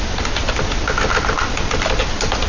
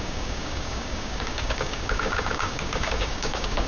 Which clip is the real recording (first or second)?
first